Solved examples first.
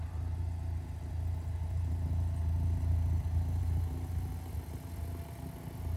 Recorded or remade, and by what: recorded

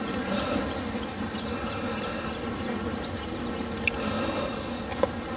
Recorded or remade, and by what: recorded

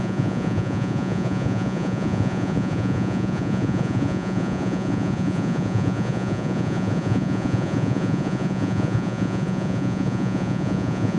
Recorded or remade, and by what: remade, vocoder, Vocos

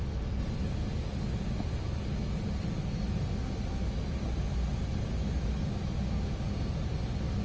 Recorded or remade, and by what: recorded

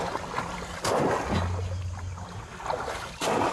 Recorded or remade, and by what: recorded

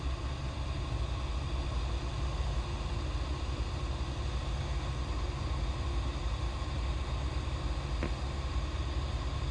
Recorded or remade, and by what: recorded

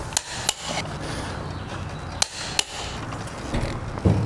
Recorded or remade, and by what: recorded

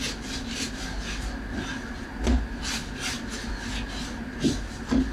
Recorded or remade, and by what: recorded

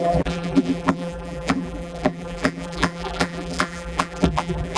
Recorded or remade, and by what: remade, vocoder, BigVGAN v2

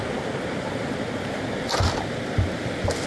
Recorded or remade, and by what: recorded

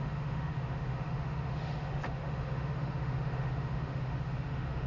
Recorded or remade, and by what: remade, autoencoder, DAC-VAE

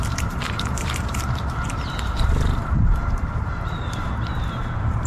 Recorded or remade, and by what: remade, vocoder, BigVGAN v2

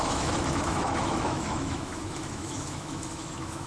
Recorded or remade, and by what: remade, autoencoder, DAC-VAE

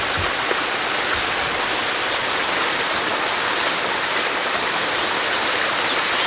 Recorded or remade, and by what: recorded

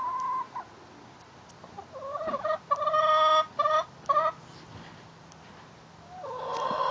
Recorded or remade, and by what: recorded